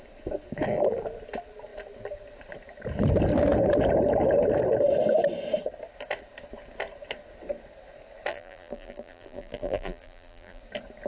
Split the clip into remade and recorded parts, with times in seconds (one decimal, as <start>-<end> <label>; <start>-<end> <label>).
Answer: 0.0-8.3 recorded; 8.3-10.6 remade; 10.6-11.1 recorded